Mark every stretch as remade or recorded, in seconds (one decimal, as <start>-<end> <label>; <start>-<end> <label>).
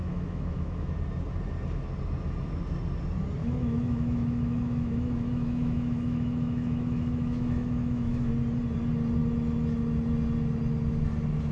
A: 0.0-0.9 remade; 0.9-3.4 recorded; 3.4-8.3 remade; 8.3-11.5 recorded